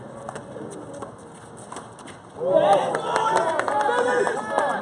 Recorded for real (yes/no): yes